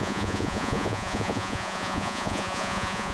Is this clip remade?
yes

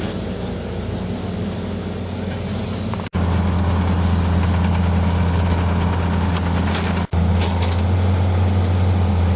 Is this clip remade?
no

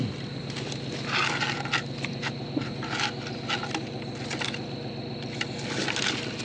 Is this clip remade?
no